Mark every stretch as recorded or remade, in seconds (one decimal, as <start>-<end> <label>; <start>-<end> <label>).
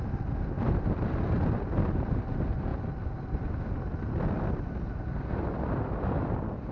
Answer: 0.0-6.7 recorded